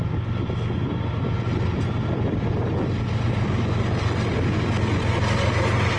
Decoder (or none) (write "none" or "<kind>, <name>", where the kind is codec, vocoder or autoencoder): none